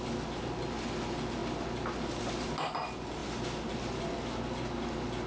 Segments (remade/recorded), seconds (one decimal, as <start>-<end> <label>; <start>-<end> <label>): 0.0-5.3 recorded